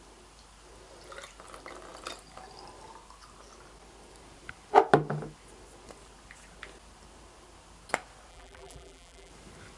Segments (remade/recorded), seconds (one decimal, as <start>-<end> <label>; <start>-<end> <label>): 0.0-8.3 recorded; 8.3-9.3 remade; 9.3-9.8 recorded